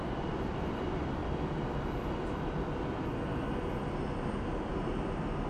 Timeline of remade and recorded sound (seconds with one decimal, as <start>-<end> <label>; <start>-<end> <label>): 0.0-1.2 remade; 1.2-3.6 recorded; 3.6-4.7 remade; 4.7-5.5 recorded